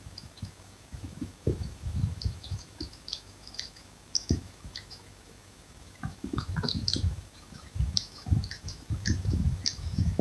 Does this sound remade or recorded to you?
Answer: remade